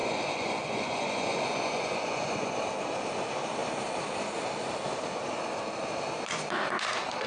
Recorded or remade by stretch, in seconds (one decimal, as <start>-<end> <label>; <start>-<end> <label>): 0.0-2.6 remade; 2.6-7.3 recorded